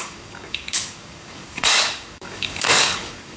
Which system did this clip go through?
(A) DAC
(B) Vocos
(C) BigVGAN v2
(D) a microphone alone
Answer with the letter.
A